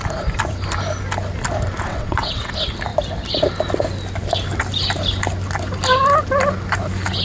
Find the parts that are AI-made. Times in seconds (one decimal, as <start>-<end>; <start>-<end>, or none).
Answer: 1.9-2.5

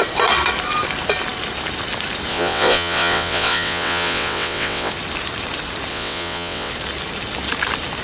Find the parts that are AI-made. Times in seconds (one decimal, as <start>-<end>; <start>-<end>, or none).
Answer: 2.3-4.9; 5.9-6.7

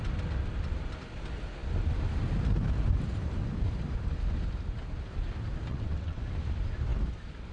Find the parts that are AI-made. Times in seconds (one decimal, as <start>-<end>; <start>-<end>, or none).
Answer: 5.7-6.2

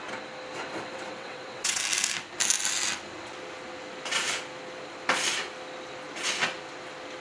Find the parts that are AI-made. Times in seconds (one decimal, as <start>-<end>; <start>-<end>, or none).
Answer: 0.9-1.8

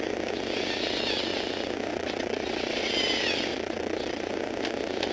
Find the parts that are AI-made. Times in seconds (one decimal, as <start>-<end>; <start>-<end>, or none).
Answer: 1.9-2.9; 3.5-4.3